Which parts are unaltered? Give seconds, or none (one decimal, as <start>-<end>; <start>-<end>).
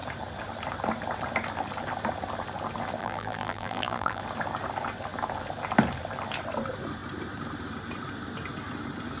0.0-3.0; 4.2-9.2